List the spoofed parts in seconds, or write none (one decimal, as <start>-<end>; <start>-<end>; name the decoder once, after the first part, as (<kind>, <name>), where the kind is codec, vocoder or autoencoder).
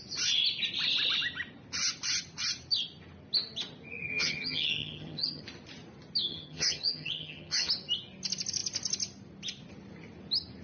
4.1-5.4 (vocoder, HiFi-GAN); 6.3-7.7